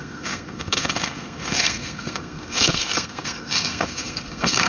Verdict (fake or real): fake